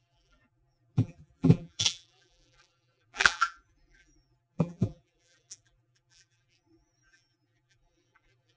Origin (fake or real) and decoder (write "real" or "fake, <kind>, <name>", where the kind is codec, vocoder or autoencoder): fake, vocoder, BigVGAN v2